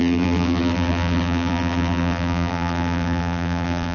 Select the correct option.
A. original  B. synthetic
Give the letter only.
B